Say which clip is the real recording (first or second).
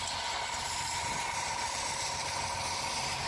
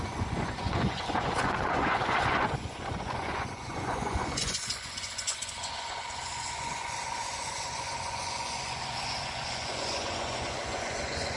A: first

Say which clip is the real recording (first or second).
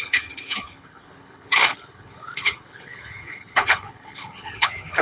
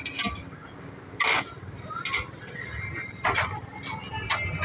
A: second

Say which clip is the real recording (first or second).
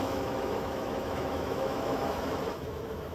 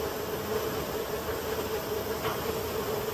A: second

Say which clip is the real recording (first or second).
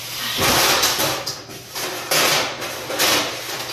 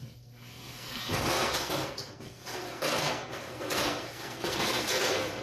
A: first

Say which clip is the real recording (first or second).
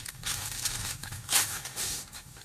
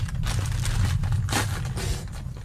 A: second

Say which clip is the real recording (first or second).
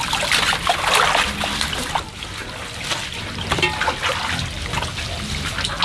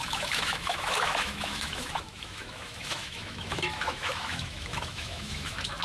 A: first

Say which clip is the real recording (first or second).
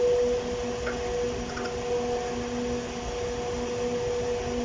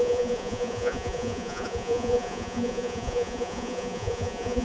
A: first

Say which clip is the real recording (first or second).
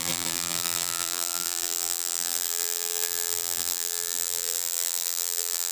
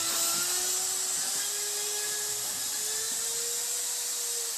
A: second